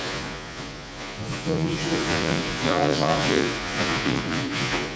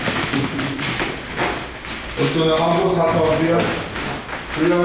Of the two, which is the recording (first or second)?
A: second